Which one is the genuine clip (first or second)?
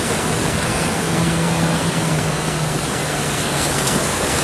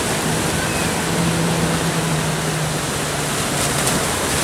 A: second